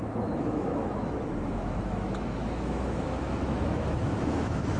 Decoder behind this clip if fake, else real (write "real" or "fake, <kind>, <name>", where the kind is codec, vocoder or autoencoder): fake, autoencoder, DAC-VAE